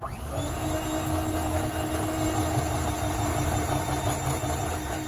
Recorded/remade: recorded